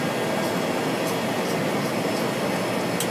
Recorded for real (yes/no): yes